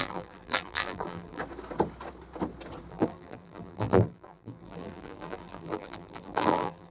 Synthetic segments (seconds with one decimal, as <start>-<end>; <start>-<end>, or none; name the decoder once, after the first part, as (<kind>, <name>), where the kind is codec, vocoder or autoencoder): 0.0-1.4 (vocoder, BigVGAN v2); 2.9-6.9